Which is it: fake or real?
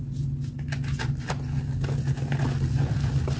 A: real